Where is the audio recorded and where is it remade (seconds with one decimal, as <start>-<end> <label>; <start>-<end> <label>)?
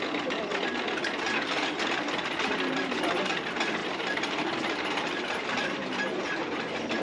0.0-0.5 recorded; 0.5-1.2 remade; 1.2-3.8 recorded; 3.8-6.2 remade; 6.2-7.0 recorded